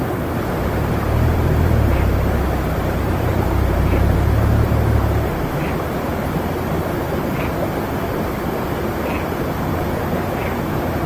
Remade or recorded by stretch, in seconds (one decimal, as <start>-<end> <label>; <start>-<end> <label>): 0.0-6.1 remade; 6.1-9.6 recorded; 9.6-11.1 remade